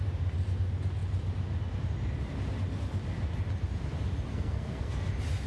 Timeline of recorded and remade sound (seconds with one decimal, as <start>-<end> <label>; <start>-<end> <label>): 0.0-4.3 recorded; 4.3-5.1 remade; 5.1-5.5 recorded